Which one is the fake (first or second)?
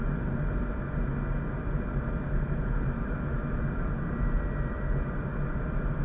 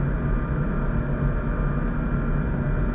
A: first